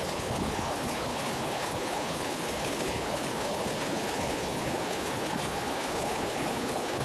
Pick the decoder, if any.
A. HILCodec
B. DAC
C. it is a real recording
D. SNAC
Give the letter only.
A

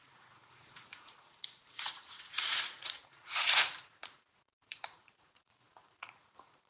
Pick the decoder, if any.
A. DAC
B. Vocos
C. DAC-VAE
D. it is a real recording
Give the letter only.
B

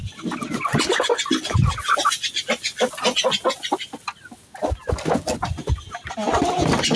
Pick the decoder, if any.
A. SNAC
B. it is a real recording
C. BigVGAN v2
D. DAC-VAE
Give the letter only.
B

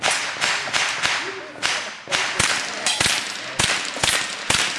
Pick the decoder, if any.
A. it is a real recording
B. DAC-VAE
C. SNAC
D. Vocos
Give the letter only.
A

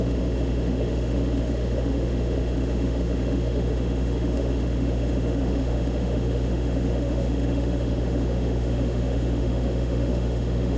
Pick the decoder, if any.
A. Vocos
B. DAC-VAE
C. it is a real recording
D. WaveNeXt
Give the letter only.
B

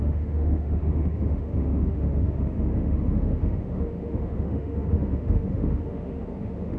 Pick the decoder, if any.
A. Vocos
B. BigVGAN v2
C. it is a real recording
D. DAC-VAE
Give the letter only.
D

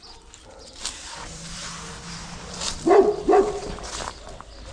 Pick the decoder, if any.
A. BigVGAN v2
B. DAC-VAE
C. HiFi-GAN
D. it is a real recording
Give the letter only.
D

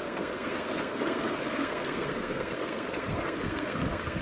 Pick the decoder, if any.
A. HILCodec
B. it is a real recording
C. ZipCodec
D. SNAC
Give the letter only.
D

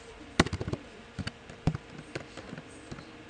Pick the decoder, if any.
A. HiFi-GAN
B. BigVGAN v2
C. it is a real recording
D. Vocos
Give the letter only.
C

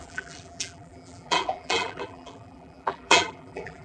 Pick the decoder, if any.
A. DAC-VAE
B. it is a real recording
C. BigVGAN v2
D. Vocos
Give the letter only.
C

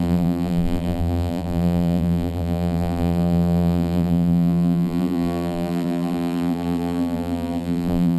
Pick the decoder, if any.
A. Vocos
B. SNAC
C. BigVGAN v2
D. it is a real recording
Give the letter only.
C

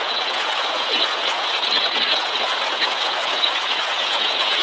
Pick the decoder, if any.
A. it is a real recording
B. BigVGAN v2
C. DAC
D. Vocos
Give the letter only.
D